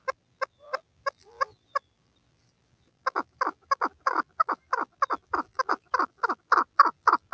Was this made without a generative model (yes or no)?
no